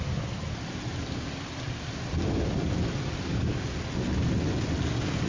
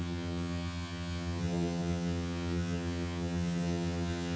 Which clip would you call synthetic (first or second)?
second